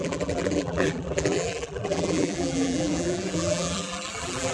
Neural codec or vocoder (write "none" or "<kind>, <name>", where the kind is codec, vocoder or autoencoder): vocoder, BigVGAN v2